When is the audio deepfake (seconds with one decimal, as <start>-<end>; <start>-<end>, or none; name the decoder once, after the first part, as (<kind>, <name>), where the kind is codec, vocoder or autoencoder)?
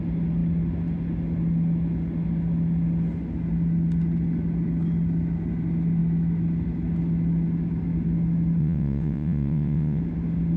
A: 8.6-10.0 (vocoder, WaveNeXt)